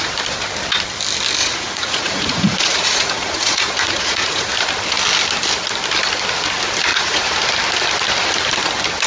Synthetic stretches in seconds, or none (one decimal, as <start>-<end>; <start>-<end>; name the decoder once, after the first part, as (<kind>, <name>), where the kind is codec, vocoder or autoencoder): 1.4-4.5 (vocoder, Vocos); 6.9-7.4